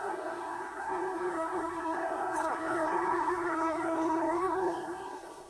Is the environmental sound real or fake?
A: fake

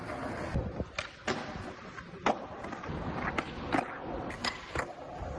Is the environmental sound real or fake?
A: real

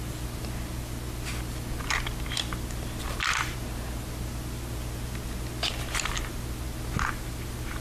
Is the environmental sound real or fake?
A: real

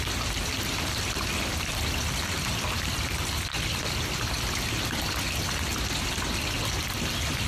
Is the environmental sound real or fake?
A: real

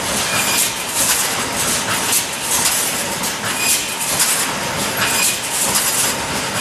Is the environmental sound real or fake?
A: real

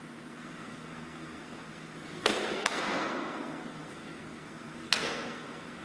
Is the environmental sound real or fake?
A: fake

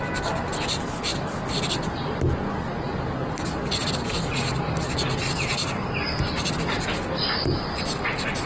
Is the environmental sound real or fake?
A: real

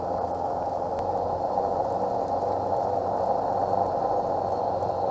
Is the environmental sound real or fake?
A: real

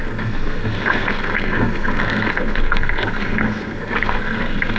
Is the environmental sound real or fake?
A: fake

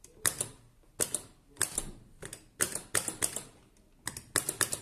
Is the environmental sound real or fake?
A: real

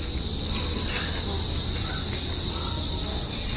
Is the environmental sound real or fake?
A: real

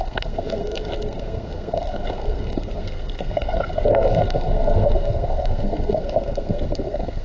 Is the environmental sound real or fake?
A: fake